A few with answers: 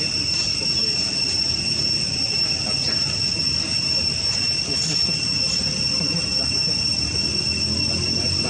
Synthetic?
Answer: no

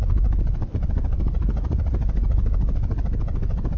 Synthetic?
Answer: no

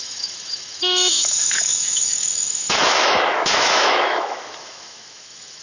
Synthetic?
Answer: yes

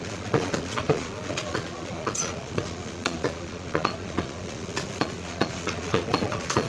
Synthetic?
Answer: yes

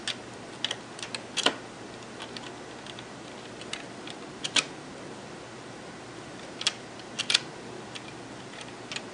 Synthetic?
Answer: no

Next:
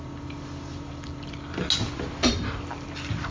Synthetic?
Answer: no